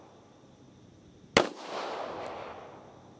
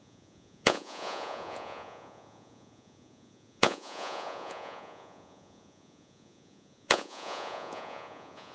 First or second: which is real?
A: first